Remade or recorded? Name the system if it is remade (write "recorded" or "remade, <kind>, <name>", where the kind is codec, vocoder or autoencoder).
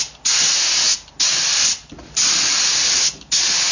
recorded